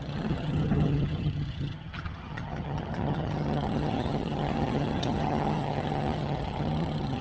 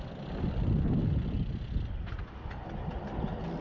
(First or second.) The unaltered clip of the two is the second